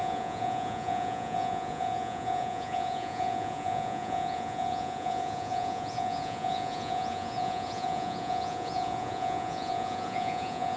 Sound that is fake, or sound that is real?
fake